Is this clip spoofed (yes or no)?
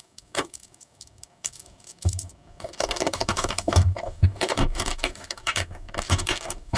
yes